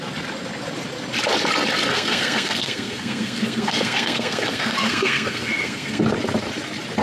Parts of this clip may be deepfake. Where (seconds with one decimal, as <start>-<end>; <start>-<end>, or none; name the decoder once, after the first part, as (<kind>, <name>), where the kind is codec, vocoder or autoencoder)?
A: 1.9-6.0 (codec, SNAC)